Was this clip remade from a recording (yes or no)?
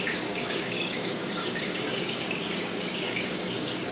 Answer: yes